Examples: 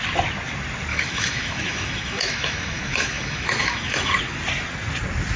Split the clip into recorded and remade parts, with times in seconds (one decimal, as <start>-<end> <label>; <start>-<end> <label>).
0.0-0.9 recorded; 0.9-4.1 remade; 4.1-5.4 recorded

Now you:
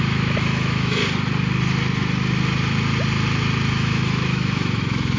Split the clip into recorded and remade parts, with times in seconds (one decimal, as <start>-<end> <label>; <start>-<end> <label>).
0.0-1.0 remade; 1.0-3.7 recorded; 3.7-5.2 remade

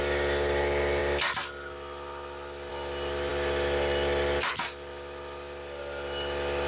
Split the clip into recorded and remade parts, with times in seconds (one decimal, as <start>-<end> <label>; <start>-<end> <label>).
0.0-6.7 recorded

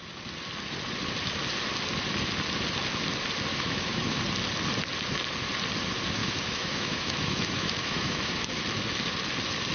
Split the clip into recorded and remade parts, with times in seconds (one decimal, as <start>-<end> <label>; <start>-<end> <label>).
0.0-3.5 recorded; 3.5-4.2 remade; 4.2-6.2 recorded; 6.2-8.5 remade; 8.5-9.7 recorded

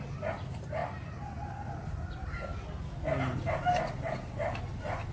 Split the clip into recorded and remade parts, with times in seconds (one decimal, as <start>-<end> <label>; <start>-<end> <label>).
0.0-5.1 recorded

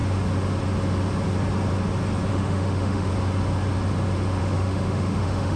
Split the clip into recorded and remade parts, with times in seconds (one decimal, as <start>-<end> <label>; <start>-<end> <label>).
0.0-2.3 recorded; 2.3-3.1 remade; 3.1-4.4 recorded; 4.4-5.6 remade